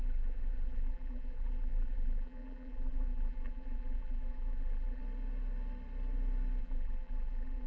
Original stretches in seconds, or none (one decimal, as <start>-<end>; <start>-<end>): 5.0-6.6